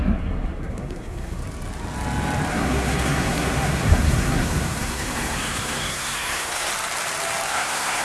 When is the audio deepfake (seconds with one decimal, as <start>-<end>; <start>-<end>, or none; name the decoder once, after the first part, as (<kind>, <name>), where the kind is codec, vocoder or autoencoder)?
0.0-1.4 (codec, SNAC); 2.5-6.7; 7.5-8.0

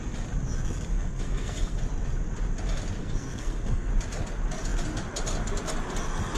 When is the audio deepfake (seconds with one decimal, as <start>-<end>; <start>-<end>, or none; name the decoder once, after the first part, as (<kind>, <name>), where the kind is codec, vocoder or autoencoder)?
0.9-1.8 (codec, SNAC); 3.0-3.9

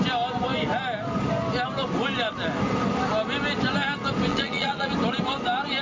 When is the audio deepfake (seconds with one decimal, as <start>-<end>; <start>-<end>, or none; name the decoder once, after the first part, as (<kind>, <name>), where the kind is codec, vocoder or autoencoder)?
4.3-4.9 (vocoder, Vocos)

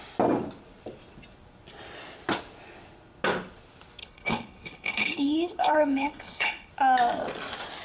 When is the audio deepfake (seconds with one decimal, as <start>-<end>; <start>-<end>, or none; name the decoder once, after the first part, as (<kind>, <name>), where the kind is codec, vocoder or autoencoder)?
4.0-6.7 (codec, HILCodec)

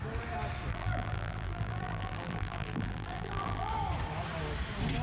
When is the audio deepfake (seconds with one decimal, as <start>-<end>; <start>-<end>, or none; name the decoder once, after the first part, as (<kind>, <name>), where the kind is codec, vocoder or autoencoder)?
0.7-3.7 (vocoder, BigVGAN v2)

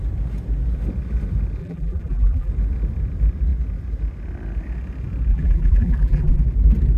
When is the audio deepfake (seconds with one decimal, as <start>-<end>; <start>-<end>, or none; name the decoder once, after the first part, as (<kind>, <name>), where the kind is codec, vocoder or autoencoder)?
1.6-2.5 (vocoder, BigVGAN v2); 5.3-6.4